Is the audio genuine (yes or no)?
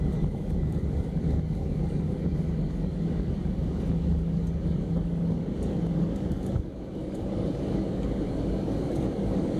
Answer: no